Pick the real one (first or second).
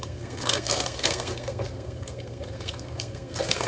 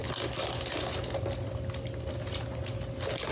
second